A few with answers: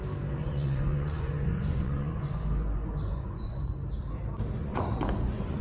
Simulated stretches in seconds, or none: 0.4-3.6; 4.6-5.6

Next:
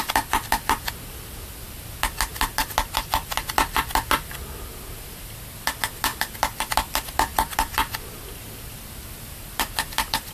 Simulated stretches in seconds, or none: none

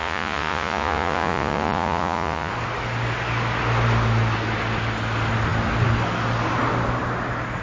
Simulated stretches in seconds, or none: 0.0-2.5

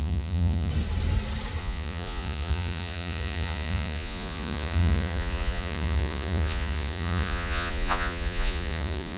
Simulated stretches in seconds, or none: 0.0-0.7; 1.6-9.2

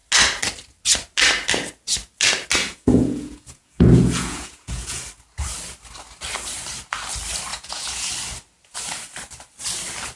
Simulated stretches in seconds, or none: 2.6-5.0; 7.5-8.1